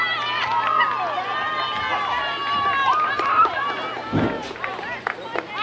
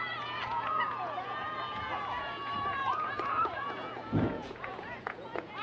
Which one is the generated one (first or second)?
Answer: second